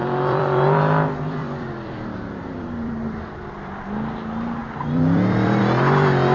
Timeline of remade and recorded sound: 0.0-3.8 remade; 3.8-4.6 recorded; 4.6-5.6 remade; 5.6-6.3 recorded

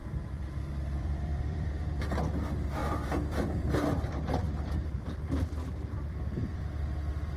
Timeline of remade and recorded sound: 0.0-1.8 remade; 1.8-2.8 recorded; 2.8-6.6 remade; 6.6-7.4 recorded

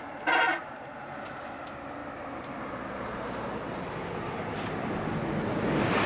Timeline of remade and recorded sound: 0.0-0.6 recorded; 0.6-1.4 remade; 1.4-2.0 recorded; 2.0-5.1 remade; 5.1-6.1 recorded

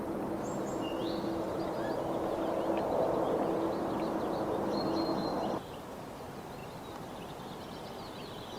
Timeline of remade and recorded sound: 0.0-5.2 recorded; 5.2-5.7 remade; 5.7-8.6 recorded